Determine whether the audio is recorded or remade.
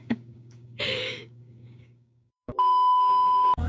remade